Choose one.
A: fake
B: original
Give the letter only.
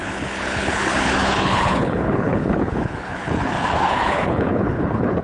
A